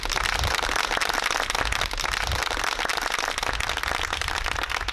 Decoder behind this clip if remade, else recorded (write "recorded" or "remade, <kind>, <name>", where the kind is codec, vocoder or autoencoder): recorded